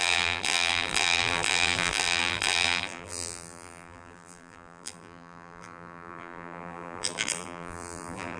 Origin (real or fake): fake